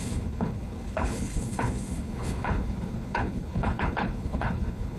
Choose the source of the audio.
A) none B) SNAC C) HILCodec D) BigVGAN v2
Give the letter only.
C